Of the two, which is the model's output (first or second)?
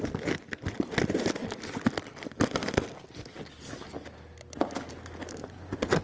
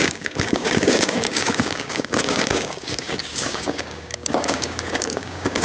second